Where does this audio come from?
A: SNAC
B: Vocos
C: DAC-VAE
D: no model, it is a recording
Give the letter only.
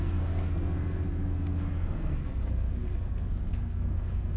A